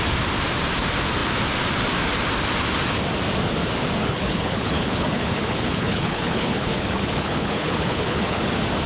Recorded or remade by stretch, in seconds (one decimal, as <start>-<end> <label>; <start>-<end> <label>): 0.0-4.0 recorded; 4.0-8.5 remade; 8.5-8.9 recorded